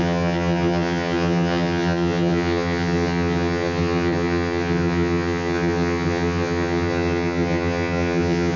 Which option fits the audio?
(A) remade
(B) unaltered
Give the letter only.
A